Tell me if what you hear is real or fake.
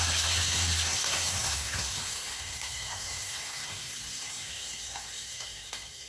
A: fake